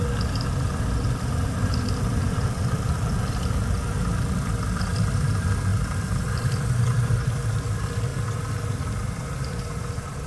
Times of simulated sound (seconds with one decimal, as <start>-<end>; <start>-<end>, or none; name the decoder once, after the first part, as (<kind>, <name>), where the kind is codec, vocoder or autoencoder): 5.7-7.3 (vocoder, BigVGAN v2); 8.1-10.3

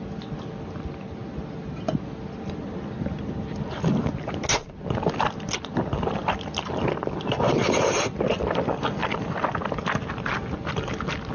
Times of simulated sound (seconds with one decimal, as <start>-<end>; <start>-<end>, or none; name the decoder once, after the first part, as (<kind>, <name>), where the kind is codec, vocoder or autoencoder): none

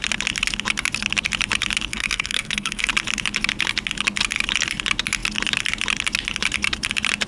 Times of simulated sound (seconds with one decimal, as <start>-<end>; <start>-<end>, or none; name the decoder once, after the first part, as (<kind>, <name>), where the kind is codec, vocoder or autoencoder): 1.9-2.9 (codec, SNAC)

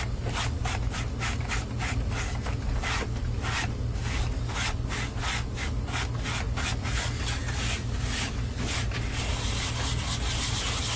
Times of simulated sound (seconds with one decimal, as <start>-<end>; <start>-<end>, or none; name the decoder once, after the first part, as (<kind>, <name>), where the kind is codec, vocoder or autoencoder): none

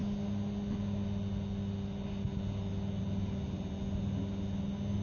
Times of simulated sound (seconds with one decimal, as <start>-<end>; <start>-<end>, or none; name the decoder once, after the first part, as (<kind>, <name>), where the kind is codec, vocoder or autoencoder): none

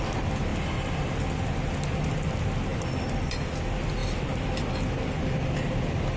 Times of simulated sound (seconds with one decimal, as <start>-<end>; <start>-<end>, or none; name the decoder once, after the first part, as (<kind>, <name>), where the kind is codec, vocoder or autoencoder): 2.7-3.5 (vocoder, BigVGAN v2); 4.0-4.6

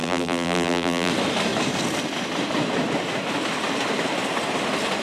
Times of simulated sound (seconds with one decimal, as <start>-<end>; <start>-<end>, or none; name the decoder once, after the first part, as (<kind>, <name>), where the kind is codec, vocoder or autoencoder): 0.0-1.1 (vocoder, BigVGAN v2)